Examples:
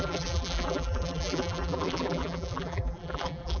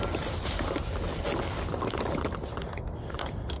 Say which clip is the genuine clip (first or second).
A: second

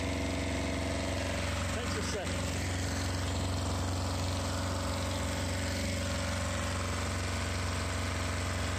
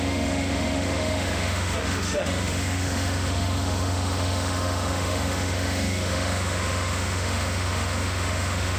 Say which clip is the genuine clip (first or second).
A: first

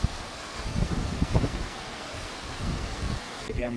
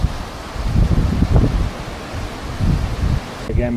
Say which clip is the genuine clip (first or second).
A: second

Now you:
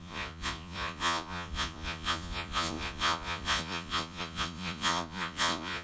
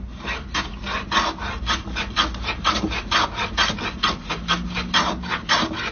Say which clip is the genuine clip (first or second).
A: second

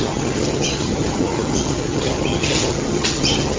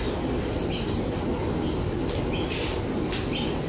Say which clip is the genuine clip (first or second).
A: second